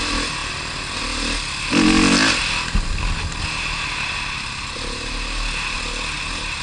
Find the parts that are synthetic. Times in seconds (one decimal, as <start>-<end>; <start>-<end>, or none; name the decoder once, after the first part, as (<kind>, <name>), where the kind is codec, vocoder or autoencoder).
none